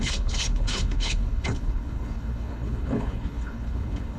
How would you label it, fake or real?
fake